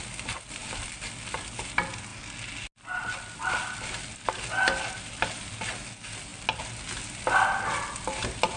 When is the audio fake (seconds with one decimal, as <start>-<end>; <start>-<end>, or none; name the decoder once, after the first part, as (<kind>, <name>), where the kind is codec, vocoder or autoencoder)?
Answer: none